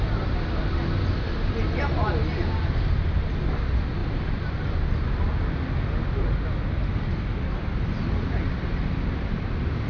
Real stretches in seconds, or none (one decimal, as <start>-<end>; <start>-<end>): 0.0-9.9